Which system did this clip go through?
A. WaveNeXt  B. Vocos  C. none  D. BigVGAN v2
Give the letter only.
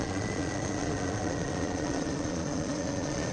B